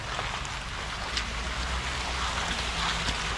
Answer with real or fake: real